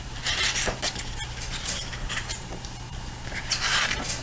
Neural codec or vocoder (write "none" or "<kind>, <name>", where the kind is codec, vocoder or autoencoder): vocoder, BigVGAN v2